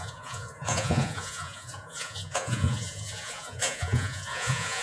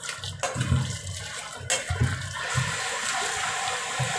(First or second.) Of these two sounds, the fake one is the first